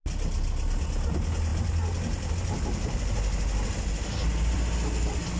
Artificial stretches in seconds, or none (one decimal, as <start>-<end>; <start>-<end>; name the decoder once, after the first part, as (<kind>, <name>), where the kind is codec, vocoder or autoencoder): none